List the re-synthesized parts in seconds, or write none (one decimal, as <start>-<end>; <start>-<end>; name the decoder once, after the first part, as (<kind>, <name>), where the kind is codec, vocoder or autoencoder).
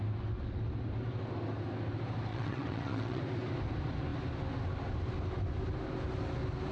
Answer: 2.3-3.2 (vocoder, WaveNeXt)